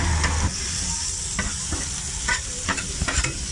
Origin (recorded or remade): recorded